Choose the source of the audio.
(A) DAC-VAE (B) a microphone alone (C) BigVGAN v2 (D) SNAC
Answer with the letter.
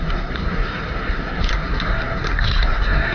D